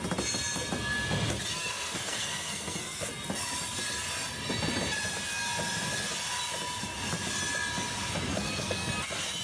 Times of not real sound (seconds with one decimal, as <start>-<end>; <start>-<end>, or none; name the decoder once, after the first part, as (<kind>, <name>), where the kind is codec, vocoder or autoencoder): 1.5-3.1 (codec, SNAC); 8.3-8.9